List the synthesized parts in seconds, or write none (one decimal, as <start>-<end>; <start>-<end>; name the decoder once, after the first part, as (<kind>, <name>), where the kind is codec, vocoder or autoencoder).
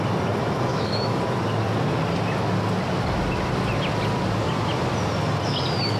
0.7-1.2 (autoencoder, DAC-VAE)